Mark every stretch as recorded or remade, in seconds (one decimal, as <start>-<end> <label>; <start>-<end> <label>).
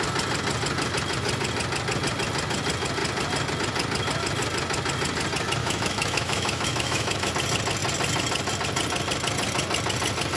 0.0-5.6 recorded; 5.6-7.3 remade; 7.3-10.4 recorded